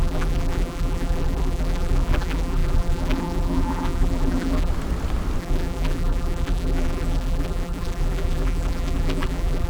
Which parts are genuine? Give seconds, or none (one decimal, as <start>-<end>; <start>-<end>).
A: 4.7-5.4